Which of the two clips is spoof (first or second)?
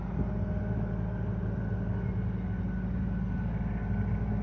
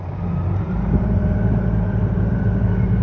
second